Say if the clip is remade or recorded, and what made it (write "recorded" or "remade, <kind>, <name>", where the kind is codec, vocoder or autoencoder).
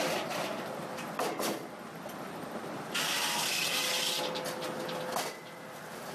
recorded